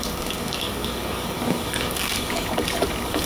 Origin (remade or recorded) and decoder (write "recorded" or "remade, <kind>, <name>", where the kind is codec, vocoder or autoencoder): remade, codec, DAC